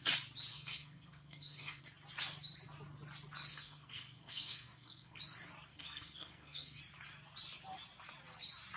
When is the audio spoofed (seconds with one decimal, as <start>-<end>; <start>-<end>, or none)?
0.5-1.8; 3.5-5.2; 5.7-6.8